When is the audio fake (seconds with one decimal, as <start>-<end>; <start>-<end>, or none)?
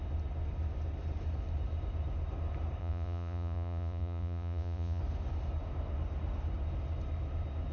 2.8-5.0